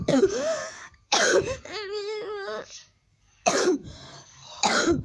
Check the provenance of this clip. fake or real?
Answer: fake